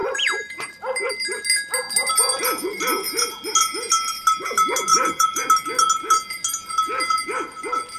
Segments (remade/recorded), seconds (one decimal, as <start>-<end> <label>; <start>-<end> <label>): 0.0-1.1 remade; 1.1-4.9 recorded; 4.9-5.4 remade; 5.4-8.0 recorded